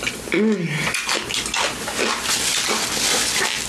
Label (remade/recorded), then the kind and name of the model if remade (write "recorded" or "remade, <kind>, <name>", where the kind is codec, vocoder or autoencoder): recorded